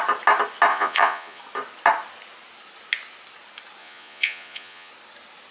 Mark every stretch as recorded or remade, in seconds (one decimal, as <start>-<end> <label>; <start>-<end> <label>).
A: 0.0-0.7 recorded; 0.7-1.4 remade; 1.4-3.8 recorded; 3.8-4.9 remade; 4.9-5.5 recorded